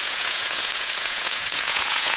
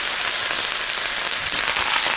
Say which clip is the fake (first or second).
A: first